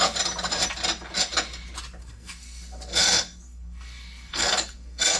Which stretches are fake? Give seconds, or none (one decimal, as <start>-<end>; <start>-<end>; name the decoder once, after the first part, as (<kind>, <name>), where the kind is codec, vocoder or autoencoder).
2.0-5.2 (codec, SNAC)